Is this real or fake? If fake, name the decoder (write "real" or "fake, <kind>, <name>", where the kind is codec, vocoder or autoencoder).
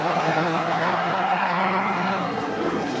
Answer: fake, codec, SNAC